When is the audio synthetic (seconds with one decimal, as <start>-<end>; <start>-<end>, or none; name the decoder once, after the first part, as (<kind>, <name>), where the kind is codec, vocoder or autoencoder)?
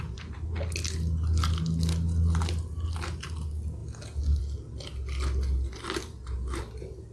none